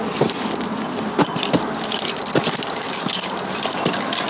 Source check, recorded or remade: recorded